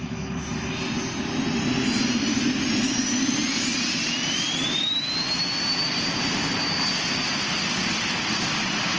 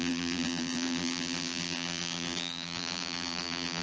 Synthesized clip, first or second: second